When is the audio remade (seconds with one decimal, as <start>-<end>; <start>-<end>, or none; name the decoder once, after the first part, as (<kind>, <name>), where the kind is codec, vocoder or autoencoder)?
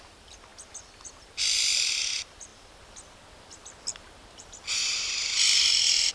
none